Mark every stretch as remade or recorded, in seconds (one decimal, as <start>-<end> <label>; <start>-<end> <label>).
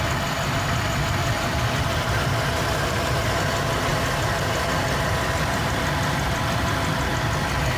0.0-1.2 recorded; 1.2-2.2 remade; 2.2-3.9 recorded; 3.9-7.1 remade; 7.1-7.8 recorded